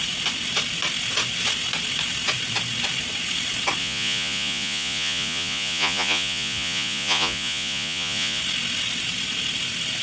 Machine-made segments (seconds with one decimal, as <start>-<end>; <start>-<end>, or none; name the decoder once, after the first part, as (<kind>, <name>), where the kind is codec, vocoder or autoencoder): 3.8-8.4 (vocoder, Vocos)